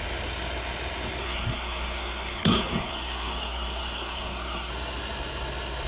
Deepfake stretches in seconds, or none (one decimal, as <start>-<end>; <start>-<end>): 1.2-4.7